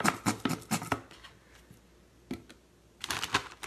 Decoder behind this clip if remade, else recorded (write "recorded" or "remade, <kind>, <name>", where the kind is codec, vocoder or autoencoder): recorded